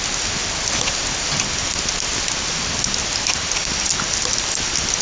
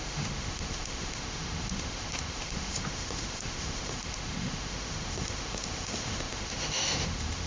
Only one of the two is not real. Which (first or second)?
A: second